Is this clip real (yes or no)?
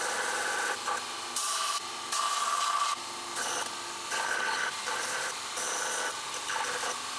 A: yes